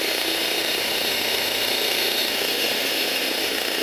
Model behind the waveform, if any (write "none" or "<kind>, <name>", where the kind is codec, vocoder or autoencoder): autoencoder, DAC-VAE